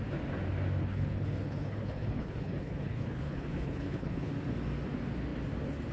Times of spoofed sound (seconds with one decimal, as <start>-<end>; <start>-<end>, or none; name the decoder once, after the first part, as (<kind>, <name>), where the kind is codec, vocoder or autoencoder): 0.8-4.3 (codec, HILCodec)

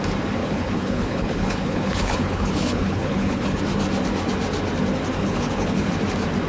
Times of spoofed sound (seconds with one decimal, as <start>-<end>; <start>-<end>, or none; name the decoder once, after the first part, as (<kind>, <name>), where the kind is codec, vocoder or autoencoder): 0.4-3.6 (codec, HILCodec); 5.2-5.9

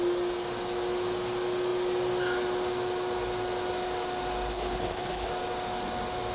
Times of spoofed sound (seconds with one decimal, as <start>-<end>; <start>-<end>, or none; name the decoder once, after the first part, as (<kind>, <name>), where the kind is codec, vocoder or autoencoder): 4.5-5.3 (codec, HILCodec)

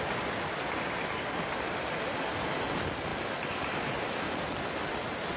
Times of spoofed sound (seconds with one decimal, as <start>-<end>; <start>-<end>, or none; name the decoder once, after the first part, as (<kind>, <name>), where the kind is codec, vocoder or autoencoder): none

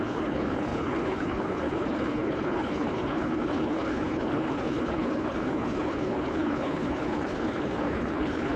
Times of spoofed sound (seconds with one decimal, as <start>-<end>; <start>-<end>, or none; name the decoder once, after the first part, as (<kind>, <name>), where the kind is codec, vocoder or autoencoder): 0.0-8.6 (codec, HILCodec)

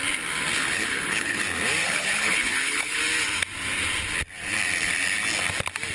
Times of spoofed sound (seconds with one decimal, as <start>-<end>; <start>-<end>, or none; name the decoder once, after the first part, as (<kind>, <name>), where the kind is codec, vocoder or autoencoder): 0.6-1.4 (codec, HILCodec); 1.8-3.0

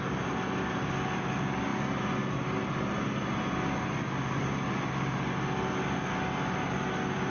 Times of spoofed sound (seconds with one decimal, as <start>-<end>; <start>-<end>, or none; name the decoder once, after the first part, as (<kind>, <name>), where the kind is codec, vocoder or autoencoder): none

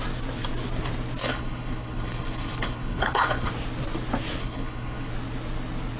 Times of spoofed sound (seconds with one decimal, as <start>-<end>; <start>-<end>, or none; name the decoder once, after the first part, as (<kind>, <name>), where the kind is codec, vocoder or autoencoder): 1.2-3.5 (codec, HILCodec); 4.4-5.1